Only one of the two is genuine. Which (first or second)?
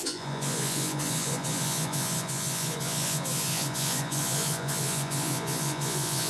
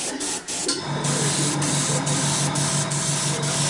second